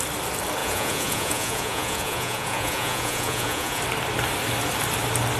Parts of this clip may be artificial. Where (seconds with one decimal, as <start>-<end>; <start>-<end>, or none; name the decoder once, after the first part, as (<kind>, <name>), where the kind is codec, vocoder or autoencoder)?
0.6-3.8 (vocoder, Vocos)